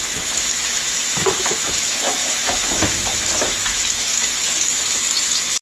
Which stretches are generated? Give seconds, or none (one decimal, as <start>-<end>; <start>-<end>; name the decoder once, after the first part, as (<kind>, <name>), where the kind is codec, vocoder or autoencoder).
0.0-5.6 (autoencoder, DAC-VAE)